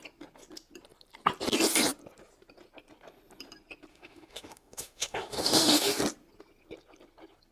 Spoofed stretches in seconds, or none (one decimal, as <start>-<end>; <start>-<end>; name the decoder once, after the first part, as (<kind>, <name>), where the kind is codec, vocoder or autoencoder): 3.9-6.0 (autoencoder, DAC-VAE)